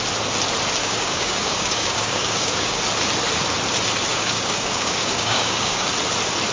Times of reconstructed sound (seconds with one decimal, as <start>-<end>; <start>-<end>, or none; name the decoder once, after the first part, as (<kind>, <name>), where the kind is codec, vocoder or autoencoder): 0.8-2.8 (codec, DAC); 4.1-5.9